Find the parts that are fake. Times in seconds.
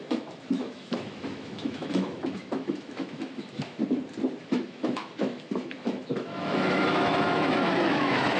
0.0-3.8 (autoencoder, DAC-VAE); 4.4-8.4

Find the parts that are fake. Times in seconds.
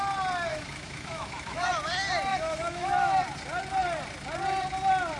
0.5-1.7 (autoencoder, DAC-VAE); 2.3-3.1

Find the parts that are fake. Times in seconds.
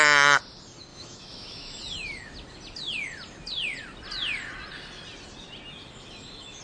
0.9-1.8 (autoencoder, DAC-VAE); 5.8-6.6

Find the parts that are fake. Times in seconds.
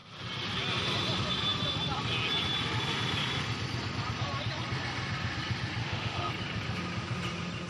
5.8-6.3 (autoencoder, DAC-VAE)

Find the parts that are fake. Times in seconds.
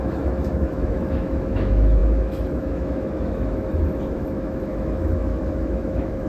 0.0-6.3 (autoencoder, DAC-VAE)